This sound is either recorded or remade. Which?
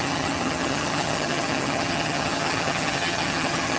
remade